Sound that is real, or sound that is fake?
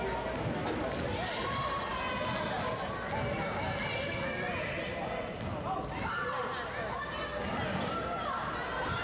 real